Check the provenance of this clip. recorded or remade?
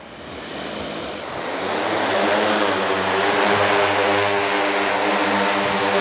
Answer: recorded